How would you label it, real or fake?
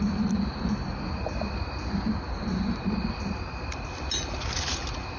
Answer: real